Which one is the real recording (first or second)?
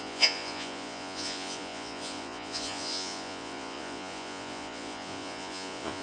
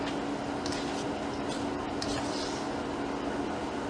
second